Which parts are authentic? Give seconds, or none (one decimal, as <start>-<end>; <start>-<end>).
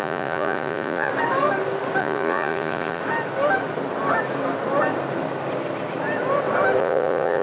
1.1-2.0; 3.0-6.8